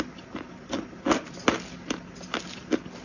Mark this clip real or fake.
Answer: real